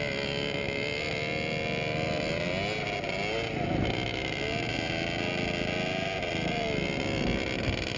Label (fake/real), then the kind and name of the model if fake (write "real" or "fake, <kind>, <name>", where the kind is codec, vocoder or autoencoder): real